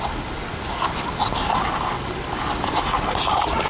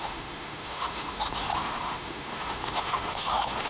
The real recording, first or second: first